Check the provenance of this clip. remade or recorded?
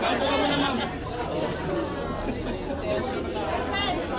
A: recorded